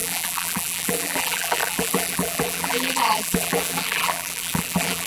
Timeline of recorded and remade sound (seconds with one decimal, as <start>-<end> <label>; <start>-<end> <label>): 0.0-5.1 remade